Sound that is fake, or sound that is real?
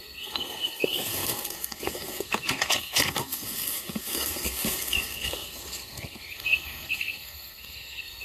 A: fake